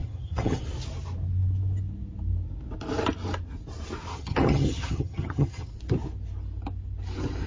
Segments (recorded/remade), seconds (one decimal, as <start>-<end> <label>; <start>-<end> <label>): 0.0-0.6 remade; 0.6-4.1 recorded; 4.1-5.7 remade; 5.7-7.5 recorded